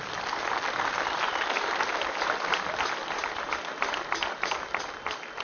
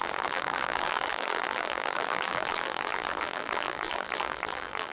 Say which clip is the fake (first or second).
second